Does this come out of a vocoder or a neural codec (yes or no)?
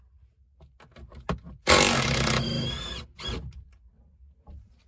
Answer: no